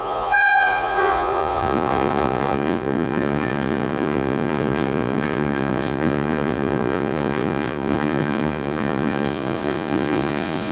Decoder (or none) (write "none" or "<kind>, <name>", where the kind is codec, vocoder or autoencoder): vocoder, Vocos